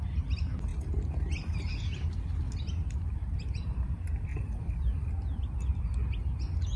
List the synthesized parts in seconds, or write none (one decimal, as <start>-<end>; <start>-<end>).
4.3-5.1